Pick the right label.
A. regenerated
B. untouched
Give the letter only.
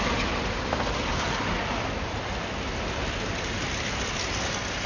B